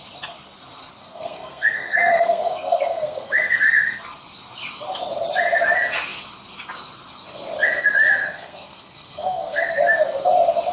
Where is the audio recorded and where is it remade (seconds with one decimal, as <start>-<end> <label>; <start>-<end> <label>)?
0.0-1.0 recorded; 1.0-4.0 remade; 4.0-8.2 recorded; 8.2-9.7 remade; 9.7-10.7 recorded